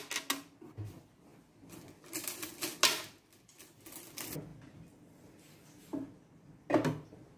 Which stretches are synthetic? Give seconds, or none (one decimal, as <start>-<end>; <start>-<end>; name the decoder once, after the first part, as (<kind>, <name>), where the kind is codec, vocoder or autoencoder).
none